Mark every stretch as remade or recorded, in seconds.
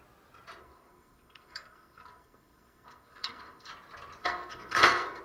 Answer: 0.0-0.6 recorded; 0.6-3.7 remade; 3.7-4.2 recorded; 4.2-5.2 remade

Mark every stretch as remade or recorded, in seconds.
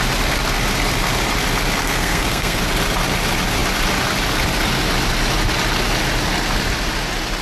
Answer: 0.0-1.8 recorded; 1.8-2.6 remade; 2.6-7.4 recorded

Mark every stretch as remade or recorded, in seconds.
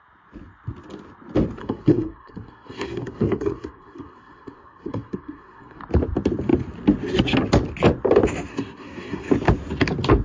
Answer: 0.0-1.6 recorded; 1.6-5.8 remade; 5.8-8.5 recorded; 8.5-9.3 remade; 9.3-10.2 recorded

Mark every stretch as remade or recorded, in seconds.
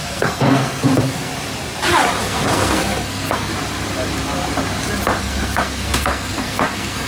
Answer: 0.0-1.3 remade; 1.3-2.2 recorded; 2.2-3.5 remade; 3.5-5.2 recorded; 5.2-7.1 remade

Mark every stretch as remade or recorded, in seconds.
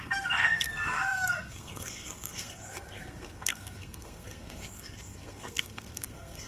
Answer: 0.0-6.5 remade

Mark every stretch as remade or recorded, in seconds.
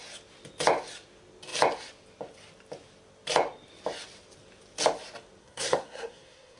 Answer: 0.0-5.4 recorded; 5.4-6.6 remade